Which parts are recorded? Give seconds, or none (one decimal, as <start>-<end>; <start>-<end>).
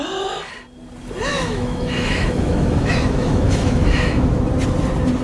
0.0-1.3; 4.4-5.2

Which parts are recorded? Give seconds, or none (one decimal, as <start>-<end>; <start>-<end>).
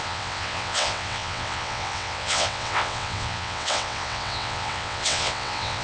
none